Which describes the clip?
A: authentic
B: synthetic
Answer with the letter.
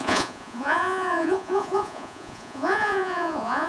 B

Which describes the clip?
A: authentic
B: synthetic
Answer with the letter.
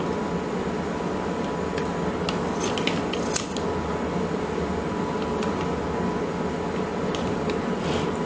A